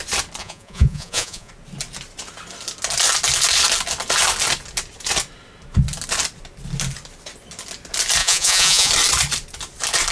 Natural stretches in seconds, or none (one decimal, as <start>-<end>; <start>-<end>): 0.0-0.4; 1.5-8.2; 8.9-10.1